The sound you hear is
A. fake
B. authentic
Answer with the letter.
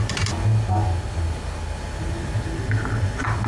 B